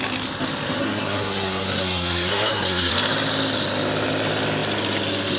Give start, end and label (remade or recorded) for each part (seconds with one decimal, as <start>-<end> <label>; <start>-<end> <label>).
0.0-0.8 recorded; 0.8-2.9 remade; 2.9-5.4 recorded